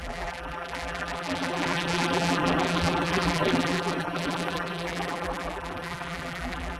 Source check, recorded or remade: remade